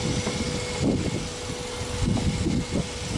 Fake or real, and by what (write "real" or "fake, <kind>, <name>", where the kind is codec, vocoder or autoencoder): real